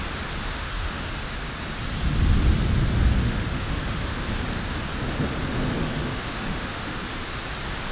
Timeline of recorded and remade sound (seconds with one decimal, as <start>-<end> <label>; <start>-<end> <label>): 0.0-0.4 recorded; 0.4-1.2 remade; 1.2-3.2 recorded; 3.2-4.2 remade; 4.2-5.8 recorded; 5.8-7.0 remade; 7.0-7.9 recorded